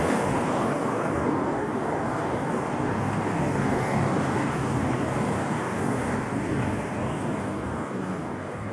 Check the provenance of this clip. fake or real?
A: fake